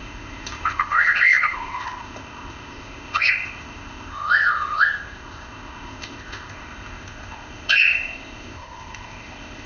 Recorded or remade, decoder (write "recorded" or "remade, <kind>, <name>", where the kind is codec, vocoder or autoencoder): remade, codec, ZipCodec